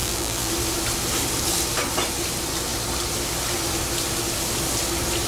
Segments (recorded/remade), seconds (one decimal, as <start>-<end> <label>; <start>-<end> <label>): 0.0-0.5 remade; 0.5-5.3 recorded